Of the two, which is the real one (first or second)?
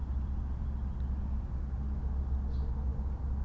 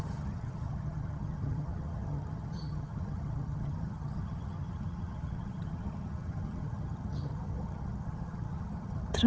first